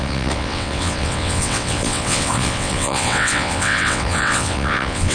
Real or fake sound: fake